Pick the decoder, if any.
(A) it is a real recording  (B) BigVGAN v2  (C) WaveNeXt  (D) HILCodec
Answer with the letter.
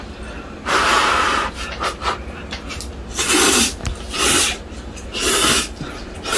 B